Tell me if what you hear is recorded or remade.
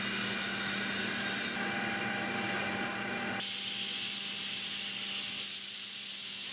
recorded